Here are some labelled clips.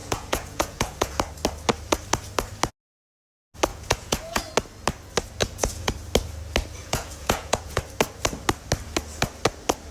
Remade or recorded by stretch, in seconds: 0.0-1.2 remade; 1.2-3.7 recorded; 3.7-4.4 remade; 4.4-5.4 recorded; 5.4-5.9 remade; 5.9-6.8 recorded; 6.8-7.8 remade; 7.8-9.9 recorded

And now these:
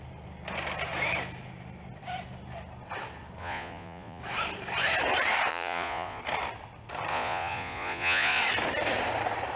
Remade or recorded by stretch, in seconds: 0.0-3.4 recorded; 3.4-4.2 remade; 4.2-5.5 recorded; 5.5-6.2 remade; 6.2-7.1 recorded; 7.1-8.4 remade; 8.4-9.6 recorded

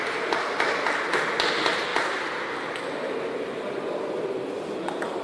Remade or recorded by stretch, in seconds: 0.0-5.2 recorded

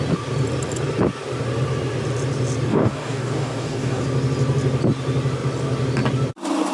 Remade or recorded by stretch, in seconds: 0.0-2.7 recorded; 2.7-4.0 remade; 4.0-6.7 recorded

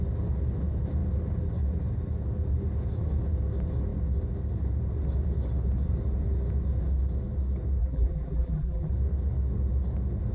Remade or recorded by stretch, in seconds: 0.0-7.8 recorded; 7.8-8.9 remade; 8.9-10.3 recorded

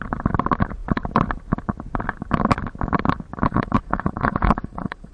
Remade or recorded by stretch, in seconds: 0.0-3.5 recorded; 3.5-5.1 remade

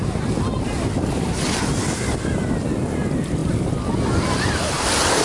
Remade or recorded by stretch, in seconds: 0.0-5.2 recorded